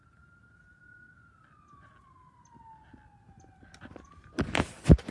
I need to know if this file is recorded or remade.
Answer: recorded